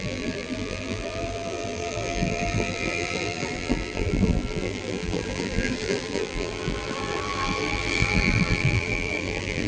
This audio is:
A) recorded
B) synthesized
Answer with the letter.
B